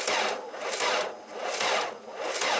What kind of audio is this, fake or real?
real